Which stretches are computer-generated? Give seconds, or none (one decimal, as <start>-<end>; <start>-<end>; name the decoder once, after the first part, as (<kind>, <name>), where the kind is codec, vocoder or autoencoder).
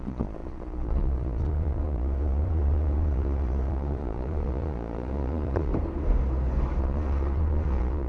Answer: 0.0-5.7 (vocoder, Vocos); 6.8-8.1